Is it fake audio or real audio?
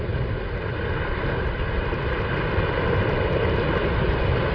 real